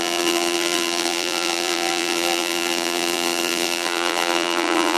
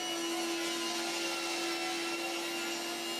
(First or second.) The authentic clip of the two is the second